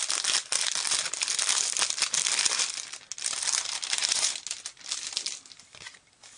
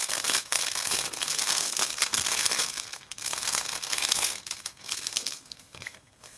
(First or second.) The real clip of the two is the first